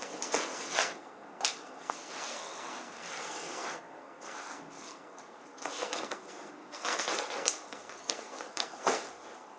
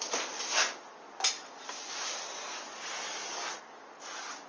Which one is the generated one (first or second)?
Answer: first